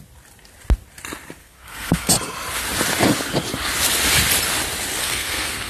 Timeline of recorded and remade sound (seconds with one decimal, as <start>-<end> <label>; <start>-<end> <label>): 0.0-1.4 recorded; 1.4-2.1 remade; 2.1-5.0 recorded; 5.0-5.7 remade